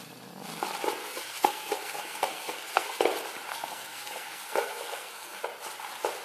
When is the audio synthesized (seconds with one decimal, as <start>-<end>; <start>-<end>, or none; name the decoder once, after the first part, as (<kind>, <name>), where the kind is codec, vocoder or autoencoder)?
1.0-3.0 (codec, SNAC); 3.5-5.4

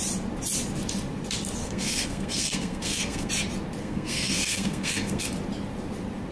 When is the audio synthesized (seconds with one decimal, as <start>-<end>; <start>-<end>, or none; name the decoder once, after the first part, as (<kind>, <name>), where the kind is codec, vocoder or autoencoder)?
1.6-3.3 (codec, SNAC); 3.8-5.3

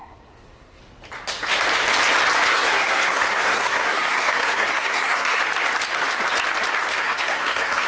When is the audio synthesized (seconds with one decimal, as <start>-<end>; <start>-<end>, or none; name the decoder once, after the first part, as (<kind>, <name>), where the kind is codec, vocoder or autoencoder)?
0.0-0.8 (codec, SNAC); 2.5-5.4; 6.9-7.9

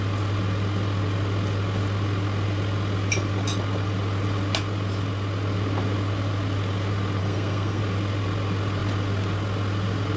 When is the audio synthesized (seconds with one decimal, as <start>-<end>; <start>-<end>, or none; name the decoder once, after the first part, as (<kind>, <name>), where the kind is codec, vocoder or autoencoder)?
7.2-7.8 (codec, SNAC)

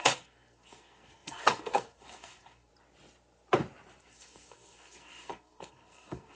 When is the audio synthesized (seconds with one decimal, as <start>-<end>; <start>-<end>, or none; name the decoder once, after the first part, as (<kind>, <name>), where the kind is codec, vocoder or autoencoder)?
0.0-2.7 (codec, SNAC); 4.0-6.3

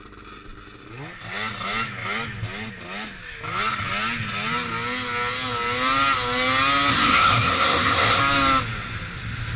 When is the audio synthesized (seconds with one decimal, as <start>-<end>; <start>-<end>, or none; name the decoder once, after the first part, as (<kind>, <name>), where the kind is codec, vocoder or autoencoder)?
6.9-8.2 (codec, SNAC)

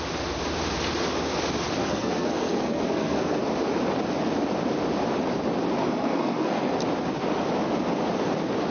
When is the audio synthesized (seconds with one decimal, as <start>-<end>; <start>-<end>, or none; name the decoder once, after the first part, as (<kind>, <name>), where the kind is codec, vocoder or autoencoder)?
1.8-3.4 (codec, SNAC); 5.8-6.7

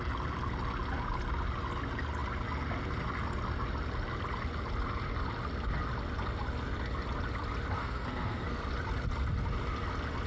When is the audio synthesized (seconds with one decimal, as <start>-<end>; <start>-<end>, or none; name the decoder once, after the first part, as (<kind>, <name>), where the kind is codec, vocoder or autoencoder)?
7.8-8.6 (codec, SNAC)